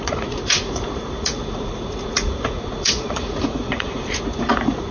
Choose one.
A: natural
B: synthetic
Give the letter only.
B